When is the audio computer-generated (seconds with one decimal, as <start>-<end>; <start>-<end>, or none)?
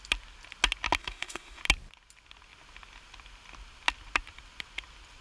1.0-1.6